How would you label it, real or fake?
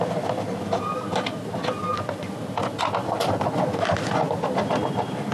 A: real